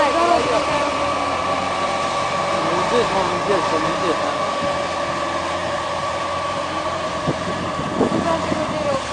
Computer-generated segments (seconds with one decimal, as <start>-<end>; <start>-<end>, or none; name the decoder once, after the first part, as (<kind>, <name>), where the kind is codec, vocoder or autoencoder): 5.6-7.9 (vocoder, BigVGAN v2)